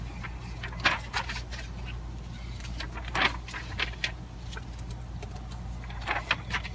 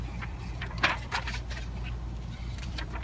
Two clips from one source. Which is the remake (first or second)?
second